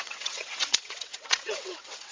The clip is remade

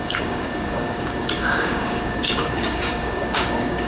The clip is remade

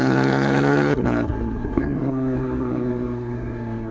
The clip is remade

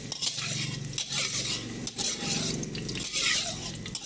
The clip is recorded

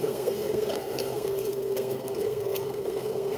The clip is remade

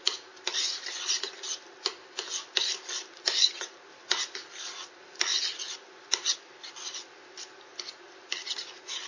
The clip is recorded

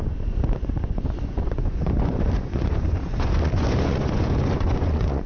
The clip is remade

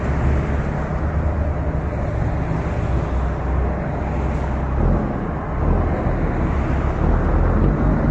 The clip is recorded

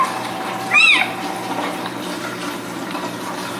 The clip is remade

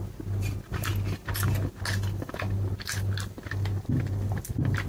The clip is recorded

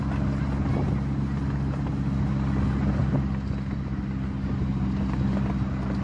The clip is recorded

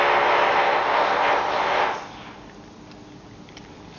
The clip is recorded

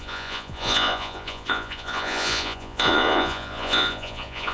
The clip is remade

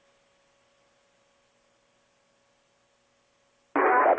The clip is recorded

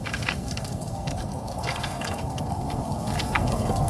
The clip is remade